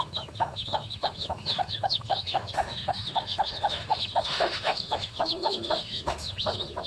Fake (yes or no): yes